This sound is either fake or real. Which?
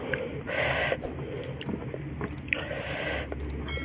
real